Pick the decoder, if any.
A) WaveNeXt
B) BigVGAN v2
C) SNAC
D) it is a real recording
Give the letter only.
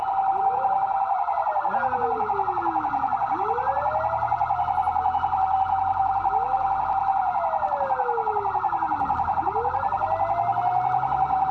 D